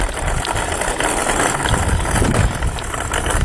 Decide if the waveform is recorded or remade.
recorded